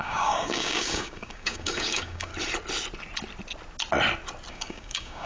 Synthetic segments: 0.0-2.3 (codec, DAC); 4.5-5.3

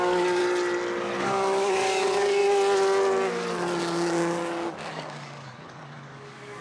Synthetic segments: 0.0-0.4 (codec, DAC); 1.2-2.4; 3.8-6.6